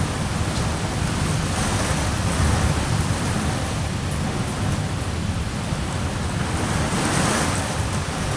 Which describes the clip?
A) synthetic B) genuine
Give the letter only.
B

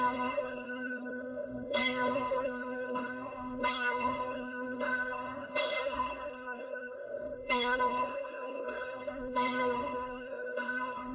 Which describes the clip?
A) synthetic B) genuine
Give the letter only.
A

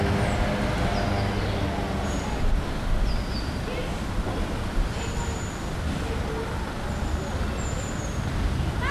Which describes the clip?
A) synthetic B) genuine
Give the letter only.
B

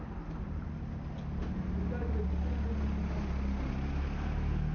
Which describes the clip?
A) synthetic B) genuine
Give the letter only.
B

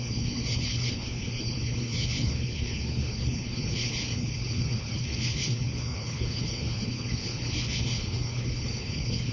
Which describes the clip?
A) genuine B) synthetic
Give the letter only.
B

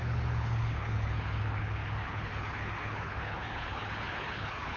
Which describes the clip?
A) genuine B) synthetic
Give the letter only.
B